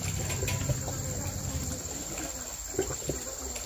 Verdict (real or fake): real